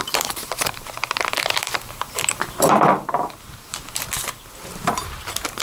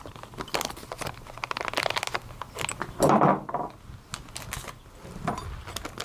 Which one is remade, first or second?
first